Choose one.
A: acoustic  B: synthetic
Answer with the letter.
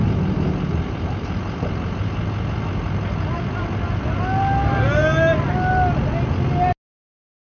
A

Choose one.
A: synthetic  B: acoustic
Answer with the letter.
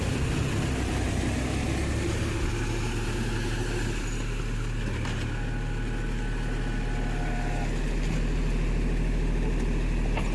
B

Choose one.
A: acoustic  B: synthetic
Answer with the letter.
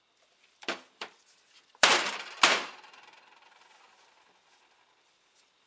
B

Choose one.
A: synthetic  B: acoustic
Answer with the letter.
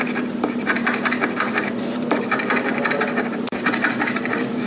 A